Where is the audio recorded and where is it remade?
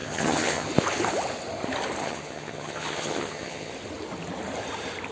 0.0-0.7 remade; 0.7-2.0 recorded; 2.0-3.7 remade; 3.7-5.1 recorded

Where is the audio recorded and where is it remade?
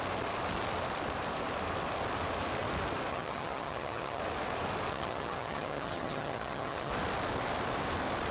0.0-3.1 recorded; 3.1-4.2 remade; 4.2-4.9 recorded; 4.9-6.9 remade; 6.9-8.3 recorded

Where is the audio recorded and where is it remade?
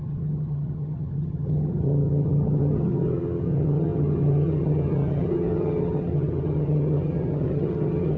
0.0-8.2 remade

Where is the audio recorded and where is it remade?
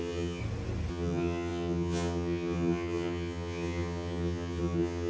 0.0-0.4 remade; 0.4-0.9 recorded; 0.9-5.1 remade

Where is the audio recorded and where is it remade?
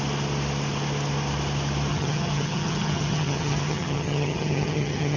0.0-1.9 recorded; 1.9-5.2 remade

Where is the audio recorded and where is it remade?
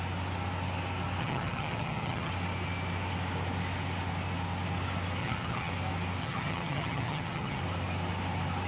0.0-1.2 recorded; 1.2-2.3 remade; 2.3-5.2 recorded; 5.2-5.7 remade; 5.7-6.2 recorded; 6.2-7.6 remade; 7.6-8.7 recorded